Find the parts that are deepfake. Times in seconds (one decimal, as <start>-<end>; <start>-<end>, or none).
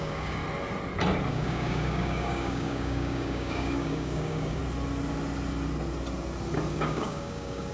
0.0-0.4; 1.3-4.6; 6.7-7.7